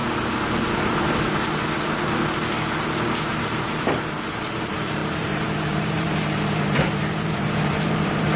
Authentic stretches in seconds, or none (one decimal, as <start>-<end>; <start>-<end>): 0.0-3.4